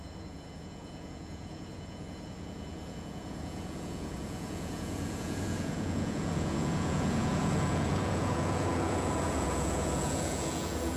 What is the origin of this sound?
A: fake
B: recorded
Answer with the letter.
A